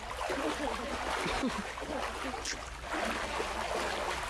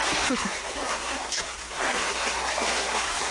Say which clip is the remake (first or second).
second